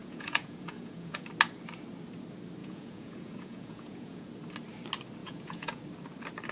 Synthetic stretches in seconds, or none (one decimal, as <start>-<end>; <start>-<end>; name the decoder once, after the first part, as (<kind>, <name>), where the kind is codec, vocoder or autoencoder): 0.0-1.3 (vocoder, Vocos); 2.6-4.3; 5.2-5.8